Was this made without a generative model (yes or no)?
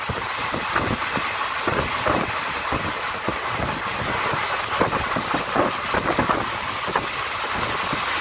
yes